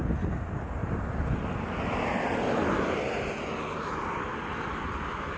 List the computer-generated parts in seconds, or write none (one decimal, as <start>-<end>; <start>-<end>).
none